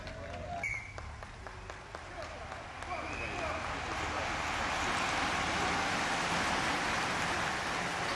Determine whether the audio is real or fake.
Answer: real